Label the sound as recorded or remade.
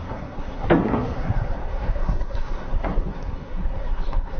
remade